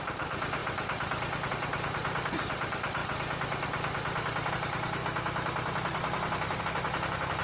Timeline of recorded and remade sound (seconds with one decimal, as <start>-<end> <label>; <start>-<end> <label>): 0.0-3.0 remade; 3.0-4.5 recorded; 4.5-5.0 remade; 5.0-6.6 recorded; 6.6-7.4 remade